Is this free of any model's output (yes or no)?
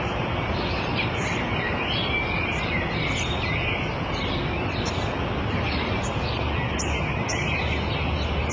yes